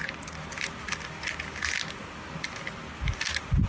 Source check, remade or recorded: recorded